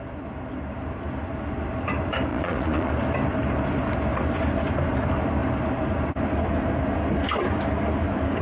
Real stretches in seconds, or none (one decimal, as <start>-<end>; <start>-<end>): 0.0-2.3; 2.9-8.4